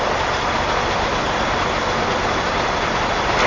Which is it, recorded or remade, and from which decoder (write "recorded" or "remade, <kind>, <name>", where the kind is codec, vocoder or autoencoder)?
recorded